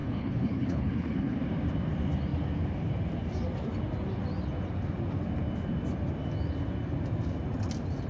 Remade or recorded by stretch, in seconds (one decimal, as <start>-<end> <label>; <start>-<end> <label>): 0.0-1.4 remade; 1.4-8.1 recorded